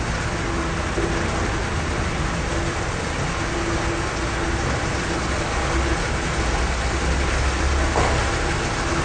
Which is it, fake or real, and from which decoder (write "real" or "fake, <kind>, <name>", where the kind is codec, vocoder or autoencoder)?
real